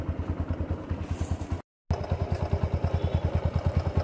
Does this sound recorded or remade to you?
recorded